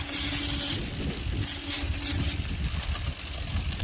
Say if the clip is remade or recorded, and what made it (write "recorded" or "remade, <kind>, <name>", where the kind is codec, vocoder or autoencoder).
recorded